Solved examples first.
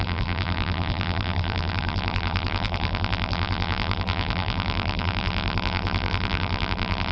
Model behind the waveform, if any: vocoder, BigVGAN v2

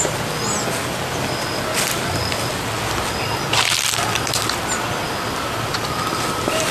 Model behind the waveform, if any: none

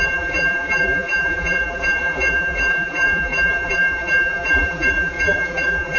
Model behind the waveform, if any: vocoder, BigVGAN v2